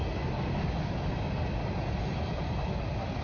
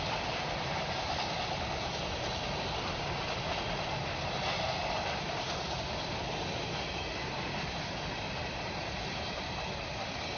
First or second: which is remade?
second